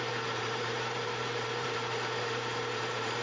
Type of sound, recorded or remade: remade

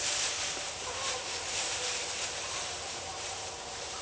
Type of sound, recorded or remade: remade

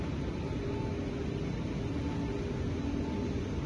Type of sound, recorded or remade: recorded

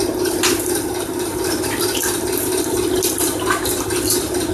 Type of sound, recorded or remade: remade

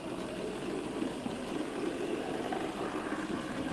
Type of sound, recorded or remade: recorded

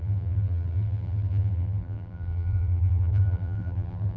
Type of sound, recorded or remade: remade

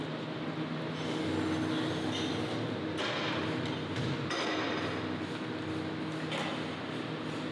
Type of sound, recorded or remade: recorded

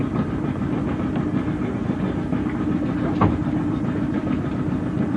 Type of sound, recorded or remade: recorded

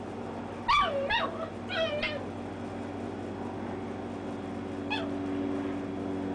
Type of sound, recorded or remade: recorded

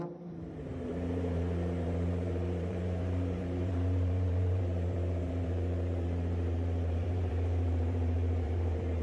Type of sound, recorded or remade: remade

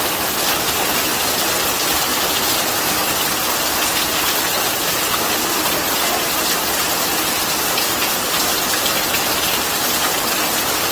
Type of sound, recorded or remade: recorded